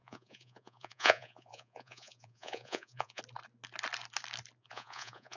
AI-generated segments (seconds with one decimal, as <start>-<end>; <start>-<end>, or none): 0.0-3.2; 4.6-5.4